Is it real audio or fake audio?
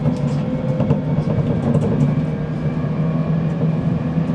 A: real